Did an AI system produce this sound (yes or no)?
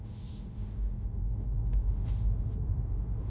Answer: yes